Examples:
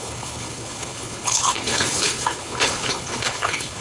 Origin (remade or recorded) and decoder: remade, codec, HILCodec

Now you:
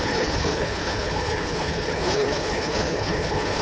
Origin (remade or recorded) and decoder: remade, codec, HILCodec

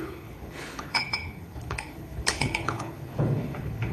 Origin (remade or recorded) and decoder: remade, codec, HILCodec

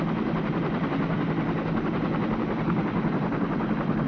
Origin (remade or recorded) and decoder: recorded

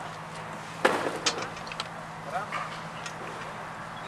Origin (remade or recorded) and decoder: recorded